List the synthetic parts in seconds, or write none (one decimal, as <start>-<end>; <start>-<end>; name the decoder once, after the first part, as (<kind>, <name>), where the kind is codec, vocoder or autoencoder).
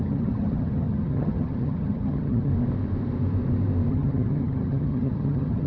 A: 0.0-2.5 (vocoder, HiFi-GAN); 3.9-5.7